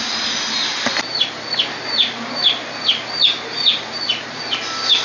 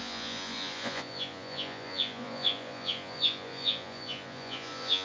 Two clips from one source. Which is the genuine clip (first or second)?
first